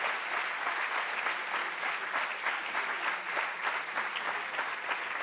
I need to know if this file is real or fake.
real